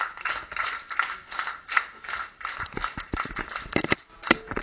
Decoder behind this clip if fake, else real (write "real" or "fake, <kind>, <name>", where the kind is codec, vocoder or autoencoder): real